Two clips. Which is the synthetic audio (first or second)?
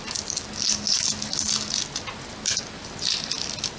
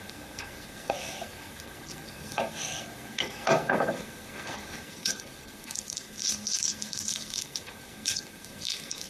second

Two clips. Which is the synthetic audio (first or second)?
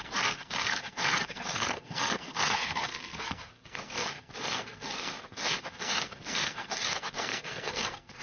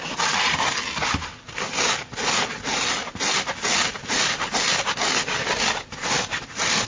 first